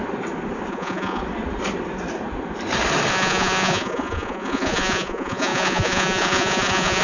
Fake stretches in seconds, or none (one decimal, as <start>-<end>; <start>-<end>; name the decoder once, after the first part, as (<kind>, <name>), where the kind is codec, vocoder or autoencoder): 0.7-1.2 (vocoder, Vocos); 3.1-7.0